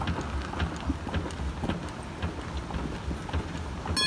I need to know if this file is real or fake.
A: real